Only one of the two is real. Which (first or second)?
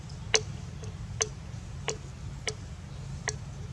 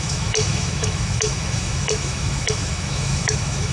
first